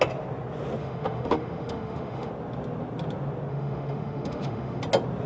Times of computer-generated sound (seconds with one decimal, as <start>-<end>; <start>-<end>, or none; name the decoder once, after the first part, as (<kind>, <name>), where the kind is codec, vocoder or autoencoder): 0.8-2.3 (autoencoder, DAC-VAE); 3.5-4.8